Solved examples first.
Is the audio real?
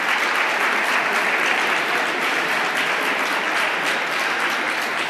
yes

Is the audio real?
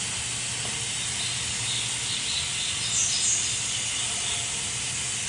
yes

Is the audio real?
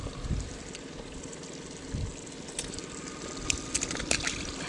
yes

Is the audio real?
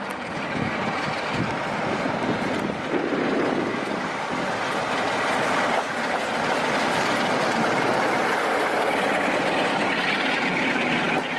yes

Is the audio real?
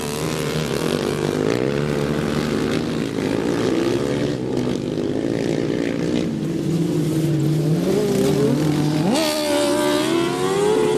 yes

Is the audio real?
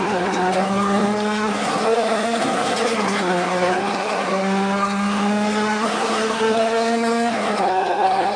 no